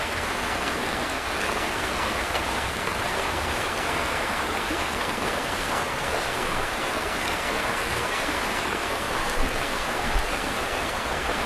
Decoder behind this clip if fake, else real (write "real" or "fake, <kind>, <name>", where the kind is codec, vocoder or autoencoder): fake, codec, SNAC